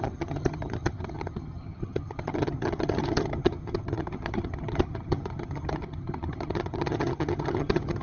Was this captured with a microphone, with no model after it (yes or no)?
no